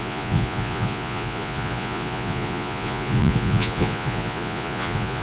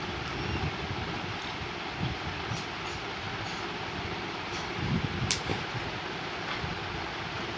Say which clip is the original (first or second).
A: second